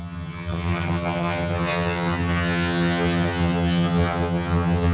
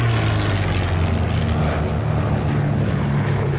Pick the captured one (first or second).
second